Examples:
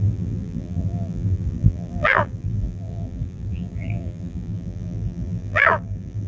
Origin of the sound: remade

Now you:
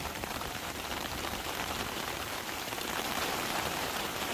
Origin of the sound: remade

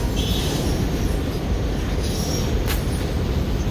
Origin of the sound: recorded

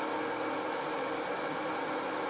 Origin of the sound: recorded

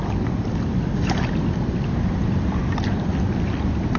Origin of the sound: recorded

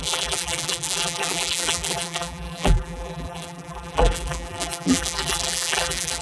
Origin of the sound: remade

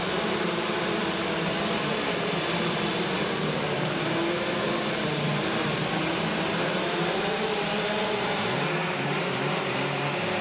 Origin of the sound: remade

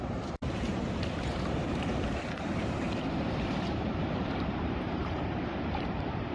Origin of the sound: remade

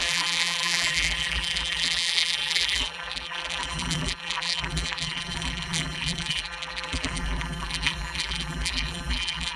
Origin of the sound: remade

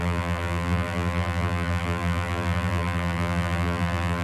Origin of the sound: remade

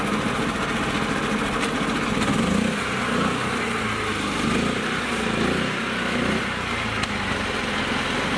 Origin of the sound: recorded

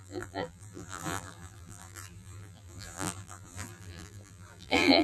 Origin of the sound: remade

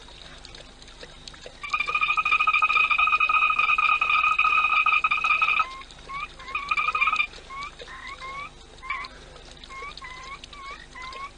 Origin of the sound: recorded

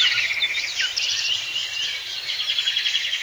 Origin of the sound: remade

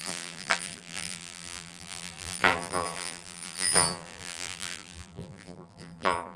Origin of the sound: remade